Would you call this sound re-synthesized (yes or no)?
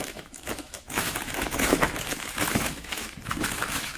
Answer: yes